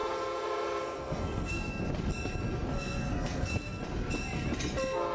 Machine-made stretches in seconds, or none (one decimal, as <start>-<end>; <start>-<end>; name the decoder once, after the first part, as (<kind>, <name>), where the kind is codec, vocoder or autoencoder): 0.0-1.8 (codec, SNAC); 2.7-3.8